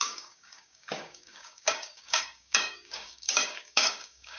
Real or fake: fake